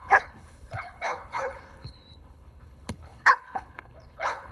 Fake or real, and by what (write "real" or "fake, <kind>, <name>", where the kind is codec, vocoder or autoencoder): fake, codec, HILCodec